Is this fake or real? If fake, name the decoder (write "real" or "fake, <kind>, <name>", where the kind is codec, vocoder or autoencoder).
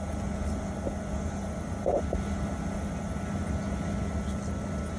real